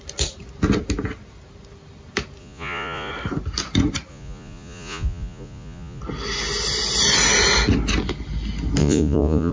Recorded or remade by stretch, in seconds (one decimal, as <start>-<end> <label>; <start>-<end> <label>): 0.0-2.4 recorded; 2.4-3.1 remade; 3.1-4.1 recorded; 4.1-6.0 remade; 6.0-8.8 recorded; 8.8-9.5 remade

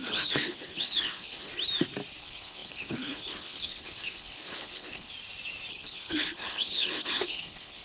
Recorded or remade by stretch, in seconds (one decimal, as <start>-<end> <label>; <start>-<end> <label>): 0.0-1.5 remade; 1.5-2.2 recorded; 2.2-5.1 remade; 5.1-5.7 recorded; 5.7-7.8 remade